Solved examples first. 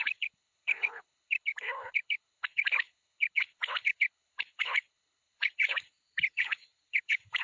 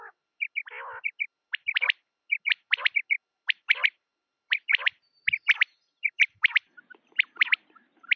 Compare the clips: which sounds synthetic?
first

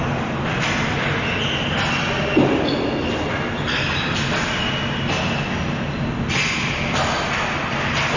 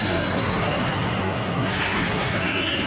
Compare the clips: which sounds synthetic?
second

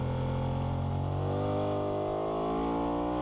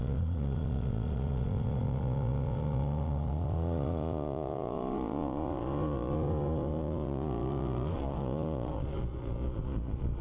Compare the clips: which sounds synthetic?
second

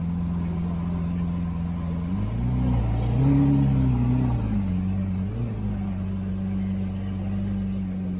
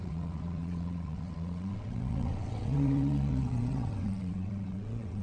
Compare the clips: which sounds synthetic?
second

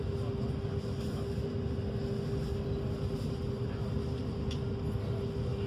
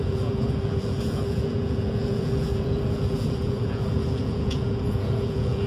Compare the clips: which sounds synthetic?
second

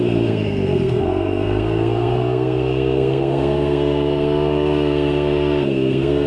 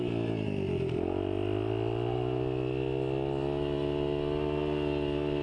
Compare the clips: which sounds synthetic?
first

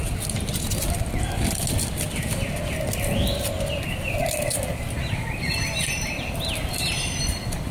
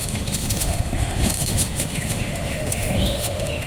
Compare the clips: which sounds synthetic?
second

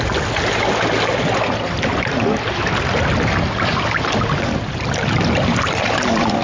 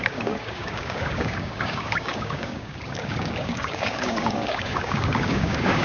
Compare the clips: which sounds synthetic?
second